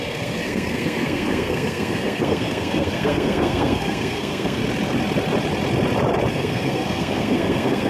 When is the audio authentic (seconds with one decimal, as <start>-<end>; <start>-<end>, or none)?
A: 4.6-6.3